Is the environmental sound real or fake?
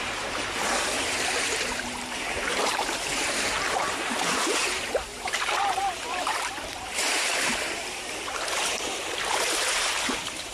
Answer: fake